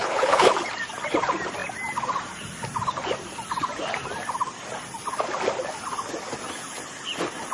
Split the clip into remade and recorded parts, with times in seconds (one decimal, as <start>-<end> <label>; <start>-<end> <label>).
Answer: 0.0-0.5 remade; 0.5-7.5 recorded